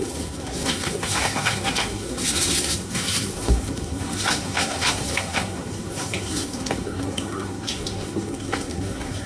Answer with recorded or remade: remade